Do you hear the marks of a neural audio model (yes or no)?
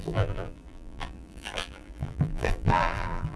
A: yes